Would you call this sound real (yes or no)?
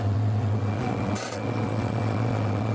no